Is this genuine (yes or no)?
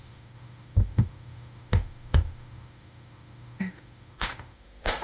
no